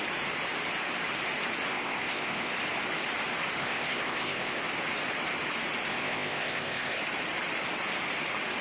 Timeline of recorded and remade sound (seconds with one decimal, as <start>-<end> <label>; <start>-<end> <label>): 0.0-1.7 recorded; 1.7-2.5 remade; 2.5-3.6 recorded; 3.6-4.6 remade; 4.6-5.9 recorded; 5.9-7.0 remade; 7.0-8.6 recorded